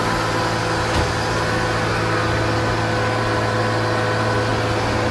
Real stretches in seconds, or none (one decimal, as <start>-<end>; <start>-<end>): 0.0-5.1